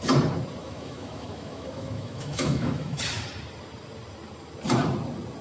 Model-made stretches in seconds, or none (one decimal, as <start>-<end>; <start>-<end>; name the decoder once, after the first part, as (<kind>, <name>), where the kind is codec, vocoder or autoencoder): 0.6-3.0 (autoencoder, DAC-VAE)